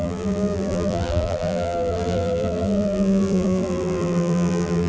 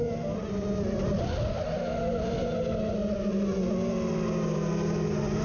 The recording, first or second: second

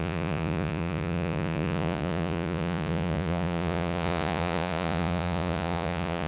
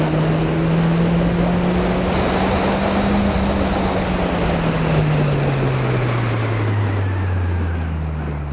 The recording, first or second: second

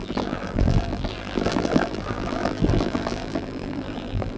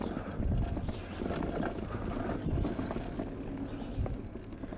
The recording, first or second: second